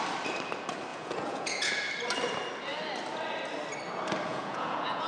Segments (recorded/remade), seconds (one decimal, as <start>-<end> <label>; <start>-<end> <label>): 0.0-0.9 recorded; 0.9-1.7 remade; 1.7-4.3 recorded; 4.3-5.1 remade

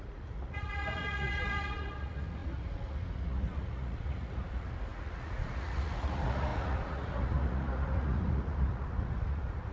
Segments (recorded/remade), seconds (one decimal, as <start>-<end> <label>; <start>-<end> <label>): 0.0-9.7 remade

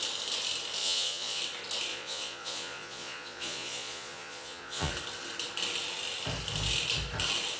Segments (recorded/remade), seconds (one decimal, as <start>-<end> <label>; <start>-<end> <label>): 0.0-0.8 recorded; 0.8-1.4 remade; 1.4-1.9 recorded; 1.9-4.9 remade; 4.9-7.6 recorded

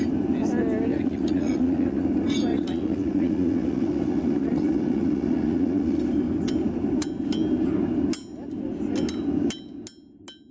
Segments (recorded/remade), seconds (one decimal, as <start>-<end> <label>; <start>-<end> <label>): 0.0-0.9 recorded; 0.9-2.1 remade; 2.1-2.5 recorded; 2.5-6.0 remade; 6.0-10.5 recorded

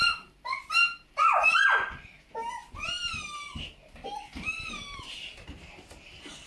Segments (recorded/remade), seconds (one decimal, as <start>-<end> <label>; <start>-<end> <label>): 0.0-1.4 recorded; 1.4-2.0 remade; 2.0-6.5 recorded

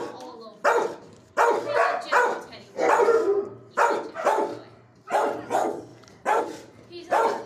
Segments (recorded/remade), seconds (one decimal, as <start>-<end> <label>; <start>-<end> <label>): 0.0-7.5 recorded

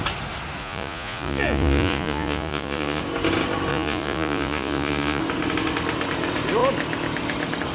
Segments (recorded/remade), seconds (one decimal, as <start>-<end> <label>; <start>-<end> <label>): 0.0-0.6 recorded; 0.6-3.0 remade; 3.0-3.7 recorded; 3.7-5.2 remade; 5.2-7.7 recorded

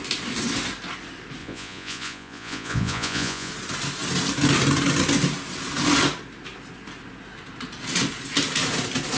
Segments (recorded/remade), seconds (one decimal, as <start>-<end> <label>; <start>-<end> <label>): 0.0-1.4 recorded; 1.4-3.5 remade; 3.5-9.2 recorded